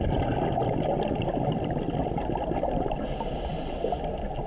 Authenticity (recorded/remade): recorded